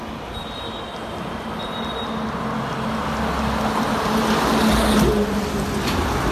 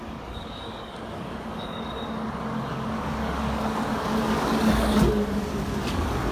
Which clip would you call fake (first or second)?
second